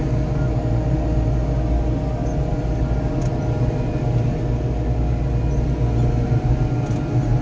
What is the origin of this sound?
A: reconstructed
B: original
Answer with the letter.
B